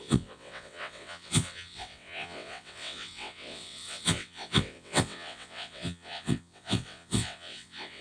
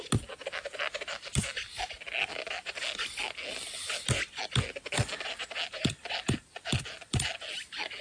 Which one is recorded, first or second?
second